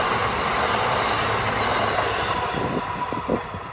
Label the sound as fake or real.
real